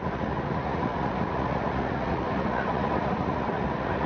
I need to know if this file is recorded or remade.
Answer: remade